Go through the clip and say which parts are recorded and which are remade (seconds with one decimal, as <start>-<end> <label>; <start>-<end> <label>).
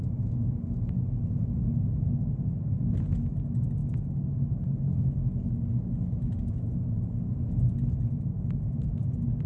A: 0.0-9.5 recorded